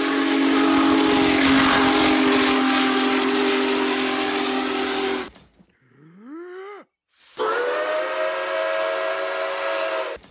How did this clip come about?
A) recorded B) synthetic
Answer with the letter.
A